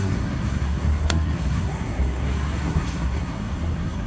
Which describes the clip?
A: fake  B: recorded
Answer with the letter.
A